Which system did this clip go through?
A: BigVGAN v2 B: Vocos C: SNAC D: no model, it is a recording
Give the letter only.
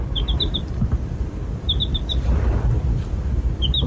A